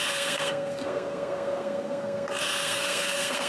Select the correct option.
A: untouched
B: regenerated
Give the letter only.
B